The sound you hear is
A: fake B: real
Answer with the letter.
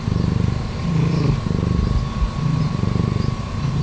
B